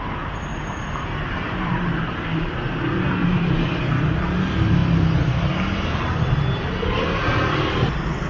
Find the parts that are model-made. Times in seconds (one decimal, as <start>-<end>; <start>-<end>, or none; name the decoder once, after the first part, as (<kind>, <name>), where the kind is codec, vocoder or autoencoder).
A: 0.5-2.0 (vocoder, BigVGAN v2); 3.2-3.8